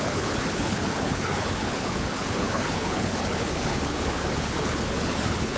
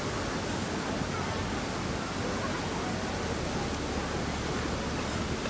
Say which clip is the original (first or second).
second